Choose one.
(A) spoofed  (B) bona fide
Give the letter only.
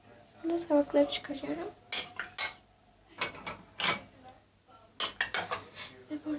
B